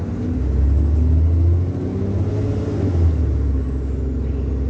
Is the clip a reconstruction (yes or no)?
no